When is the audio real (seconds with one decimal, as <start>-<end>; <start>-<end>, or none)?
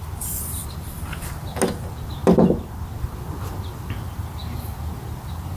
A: 0.0-0.6; 1.3-5.6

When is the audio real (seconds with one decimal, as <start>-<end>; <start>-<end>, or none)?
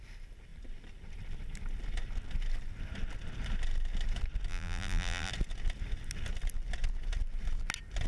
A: 0.0-4.5; 5.3-8.1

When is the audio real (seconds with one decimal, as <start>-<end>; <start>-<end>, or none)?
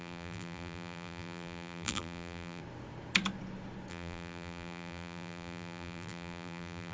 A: 2.6-3.9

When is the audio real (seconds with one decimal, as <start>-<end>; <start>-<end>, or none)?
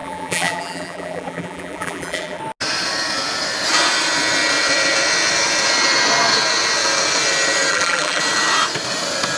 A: 2.4-7.7; 8.2-9.4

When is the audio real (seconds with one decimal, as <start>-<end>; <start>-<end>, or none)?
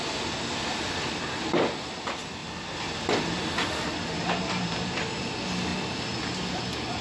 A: 0.0-7.0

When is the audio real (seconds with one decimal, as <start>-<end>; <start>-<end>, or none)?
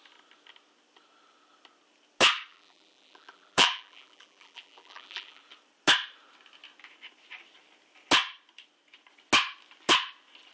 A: 0.0-2.5; 5.4-10.5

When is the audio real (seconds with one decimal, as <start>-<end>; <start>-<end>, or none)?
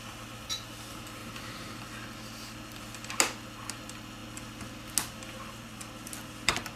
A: 0.0-6.8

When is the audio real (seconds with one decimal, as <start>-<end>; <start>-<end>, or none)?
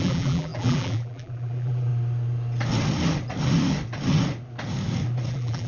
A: 1.9-5.3